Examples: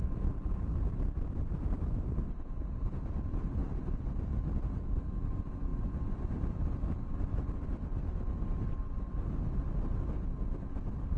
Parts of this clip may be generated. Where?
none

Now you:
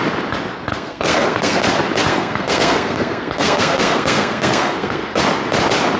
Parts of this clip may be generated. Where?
0.7-1.6 (codec, SNAC); 2.1-5.2

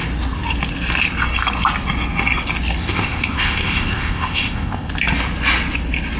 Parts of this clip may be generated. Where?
2.8-4.9 (codec, ZipCodec)

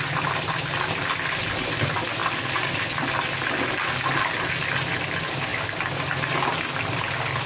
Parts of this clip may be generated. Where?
none

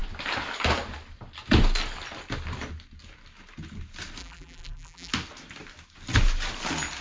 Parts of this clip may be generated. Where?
4.2-5.1 (vocoder, BigVGAN v2)

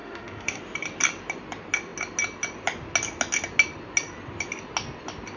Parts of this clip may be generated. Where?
0.0-0.6 (autoencoder, DAC-VAE)

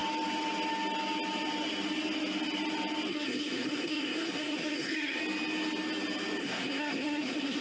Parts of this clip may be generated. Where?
3.1-5.2 (codec, SNAC); 6.4-7.6